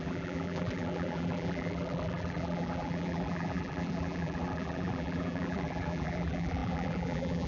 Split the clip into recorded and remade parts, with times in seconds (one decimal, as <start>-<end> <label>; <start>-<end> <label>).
0.0-7.5 remade